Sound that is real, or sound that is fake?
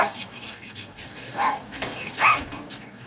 fake